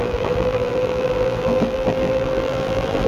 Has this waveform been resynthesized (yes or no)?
yes